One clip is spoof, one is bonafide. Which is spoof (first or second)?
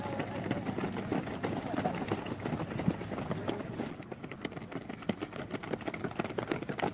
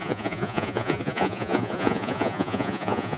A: second